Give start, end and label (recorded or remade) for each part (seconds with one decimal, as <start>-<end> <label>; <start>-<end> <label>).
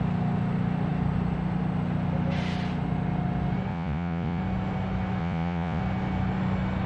0.0-3.7 recorded; 3.7-4.4 remade; 4.4-5.2 recorded; 5.2-5.8 remade; 5.8-6.9 recorded